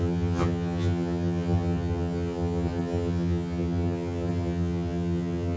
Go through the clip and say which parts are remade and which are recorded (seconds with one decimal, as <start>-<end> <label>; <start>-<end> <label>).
0.0-5.6 remade